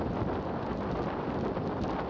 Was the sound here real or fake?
real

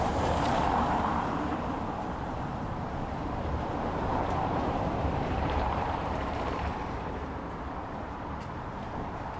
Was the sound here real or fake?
fake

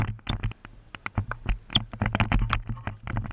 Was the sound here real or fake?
real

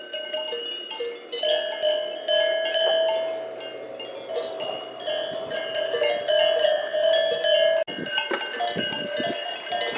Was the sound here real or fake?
real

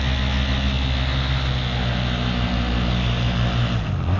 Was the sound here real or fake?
real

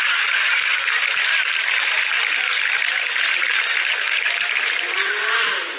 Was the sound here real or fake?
real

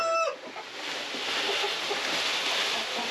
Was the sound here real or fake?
real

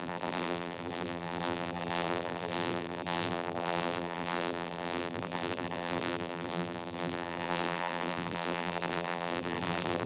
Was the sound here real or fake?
fake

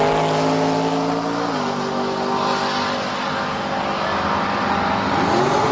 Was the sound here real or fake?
real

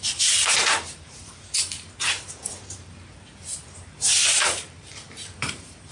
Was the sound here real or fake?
fake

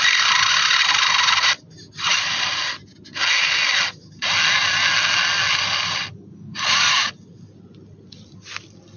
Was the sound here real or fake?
real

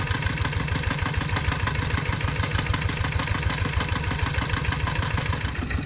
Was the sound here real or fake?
real